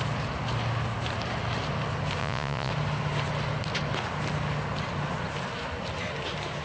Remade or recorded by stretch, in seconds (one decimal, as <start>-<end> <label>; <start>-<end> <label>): 0.0-2.2 recorded; 2.2-2.7 remade; 2.7-6.6 recorded